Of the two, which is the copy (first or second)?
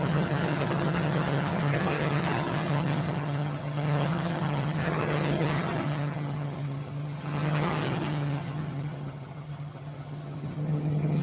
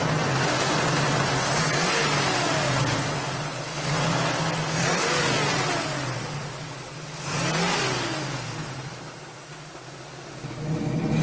first